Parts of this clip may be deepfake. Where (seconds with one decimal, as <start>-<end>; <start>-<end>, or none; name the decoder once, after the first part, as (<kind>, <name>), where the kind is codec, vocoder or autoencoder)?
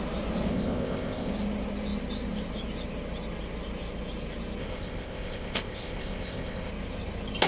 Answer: 0.5-1.3 (codec, ZipCodec); 4.6-6.7